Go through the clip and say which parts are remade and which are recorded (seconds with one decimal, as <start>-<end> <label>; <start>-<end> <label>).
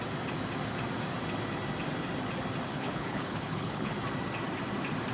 0.0-2.7 recorded; 2.7-3.9 remade; 3.9-5.1 recorded